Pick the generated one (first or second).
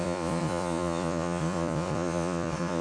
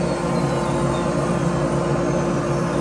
first